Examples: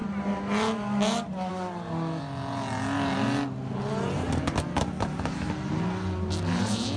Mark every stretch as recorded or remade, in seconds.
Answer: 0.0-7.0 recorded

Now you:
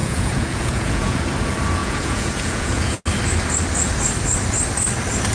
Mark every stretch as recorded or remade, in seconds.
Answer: 0.0-1.2 remade; 1.2-1.8 recorded; 1.8-3.0 remade; 3.0-5.3 recorded

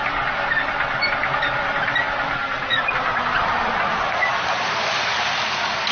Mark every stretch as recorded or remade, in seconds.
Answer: 0.0-5.9 recorded